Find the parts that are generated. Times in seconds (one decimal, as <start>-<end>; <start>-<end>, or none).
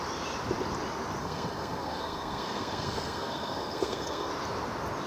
1.2-4.3